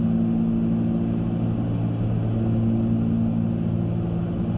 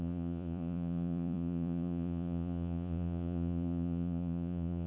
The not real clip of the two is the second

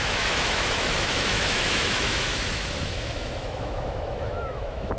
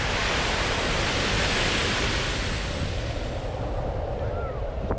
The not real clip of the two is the first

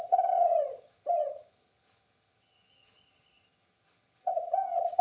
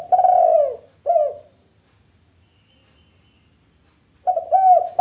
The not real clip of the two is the first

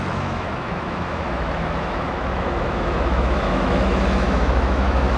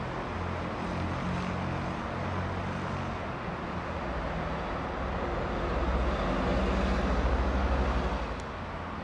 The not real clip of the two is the first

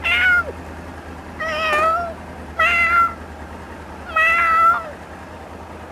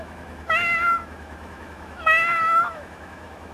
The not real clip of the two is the second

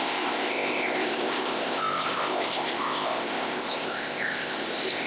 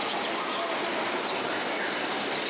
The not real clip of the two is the first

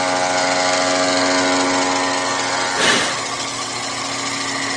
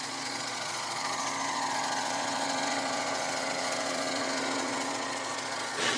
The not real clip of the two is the second